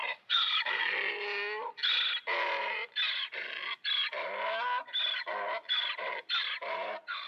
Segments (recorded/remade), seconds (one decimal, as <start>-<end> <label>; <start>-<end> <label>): 0.0-0.8 remade; 0.8-7.3 recorded